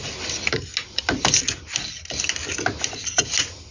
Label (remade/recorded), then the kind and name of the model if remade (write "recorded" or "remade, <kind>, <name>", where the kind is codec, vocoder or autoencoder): recorded